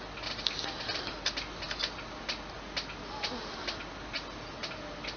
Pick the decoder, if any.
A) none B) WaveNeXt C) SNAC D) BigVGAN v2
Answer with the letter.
A